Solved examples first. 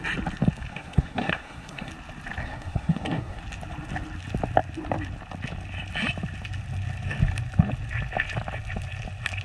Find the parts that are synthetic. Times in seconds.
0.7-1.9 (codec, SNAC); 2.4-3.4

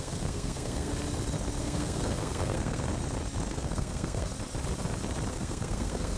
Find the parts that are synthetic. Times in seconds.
0.0-0.9 (codec, SNAC); 1.6-2.9; 3.5-4.3; 5.3-6.2